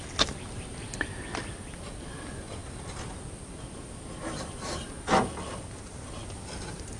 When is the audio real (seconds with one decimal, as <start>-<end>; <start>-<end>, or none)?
0.0-7.0